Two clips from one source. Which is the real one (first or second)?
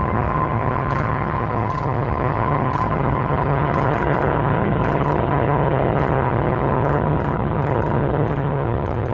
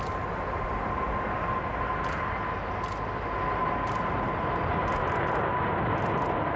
second